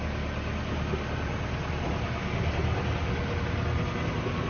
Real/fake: real